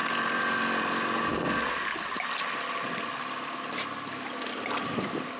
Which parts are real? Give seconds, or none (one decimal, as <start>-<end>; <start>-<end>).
0.0-5.4